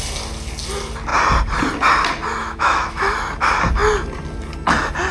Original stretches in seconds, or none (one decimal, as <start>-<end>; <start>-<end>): 0.0-2.4; 3.2-5.1